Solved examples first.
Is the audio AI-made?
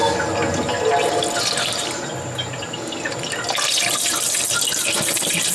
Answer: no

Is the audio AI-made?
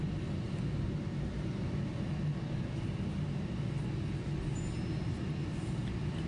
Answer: no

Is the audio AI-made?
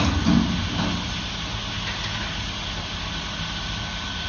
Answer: no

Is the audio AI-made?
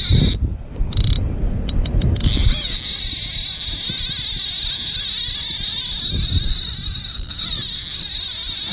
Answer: no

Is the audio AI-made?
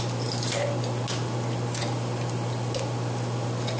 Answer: no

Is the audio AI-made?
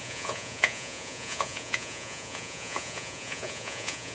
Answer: yes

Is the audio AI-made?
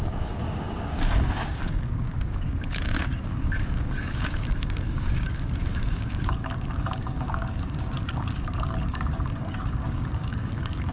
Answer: yes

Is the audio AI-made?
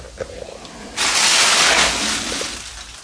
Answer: no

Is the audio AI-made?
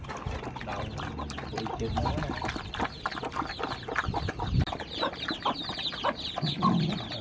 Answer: no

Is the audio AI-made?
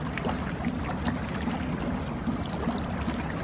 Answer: no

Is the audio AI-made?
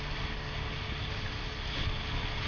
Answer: no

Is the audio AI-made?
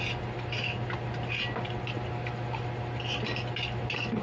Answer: no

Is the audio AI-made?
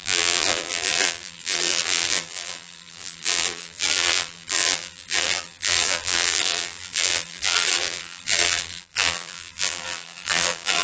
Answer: yes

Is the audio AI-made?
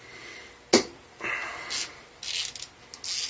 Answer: no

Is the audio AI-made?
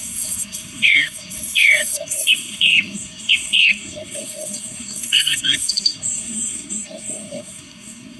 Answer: yes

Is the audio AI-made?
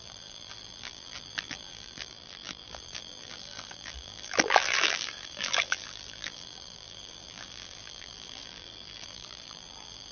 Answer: yes